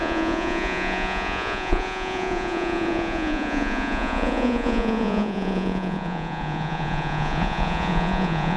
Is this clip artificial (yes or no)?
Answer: yes